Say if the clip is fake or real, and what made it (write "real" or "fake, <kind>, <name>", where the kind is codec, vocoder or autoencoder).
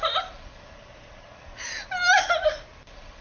real